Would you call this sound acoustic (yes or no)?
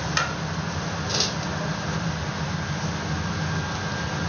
yes